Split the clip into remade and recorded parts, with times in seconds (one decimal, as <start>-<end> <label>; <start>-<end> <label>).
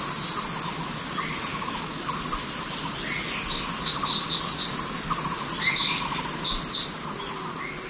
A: 0.0-1.5 recorded; 1.5-2.0 remade; 2.0-7.9 recorded